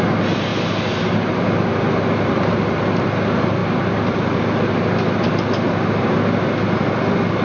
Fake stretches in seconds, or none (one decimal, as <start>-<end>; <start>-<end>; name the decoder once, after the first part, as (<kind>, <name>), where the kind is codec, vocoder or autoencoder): none